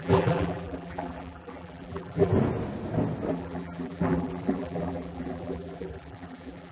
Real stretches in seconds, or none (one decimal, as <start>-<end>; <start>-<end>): 2.3-3.3